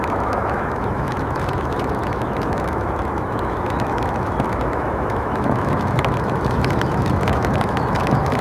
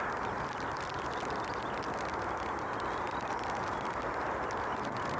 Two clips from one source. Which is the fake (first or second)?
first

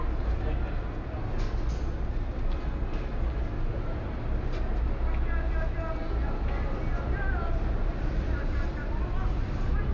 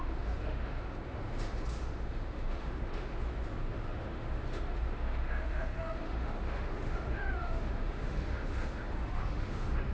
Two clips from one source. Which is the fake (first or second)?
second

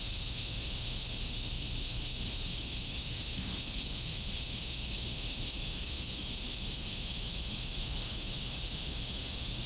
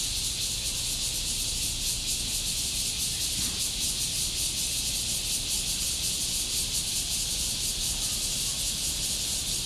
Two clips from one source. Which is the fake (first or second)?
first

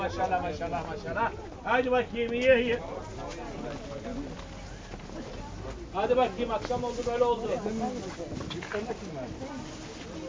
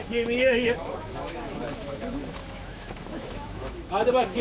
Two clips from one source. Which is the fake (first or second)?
second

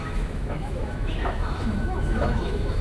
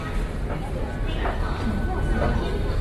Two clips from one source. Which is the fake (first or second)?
first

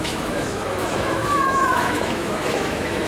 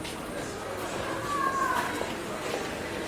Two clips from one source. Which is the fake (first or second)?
first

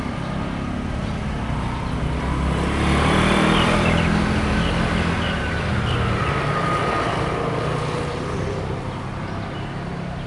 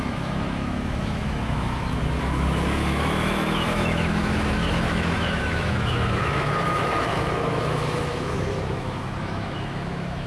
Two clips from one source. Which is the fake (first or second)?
second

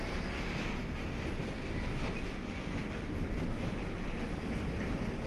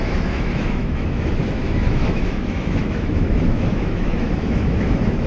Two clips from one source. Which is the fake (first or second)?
second